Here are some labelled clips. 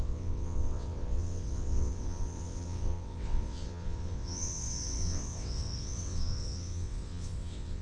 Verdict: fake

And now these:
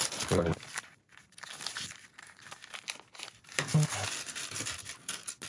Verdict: real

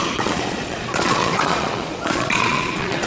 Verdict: fake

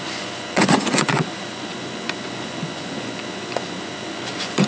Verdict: fake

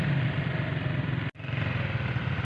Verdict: real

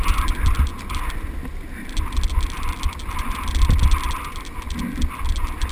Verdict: real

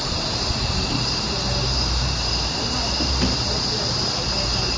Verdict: fake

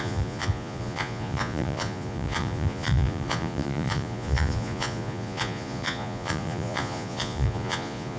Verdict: fake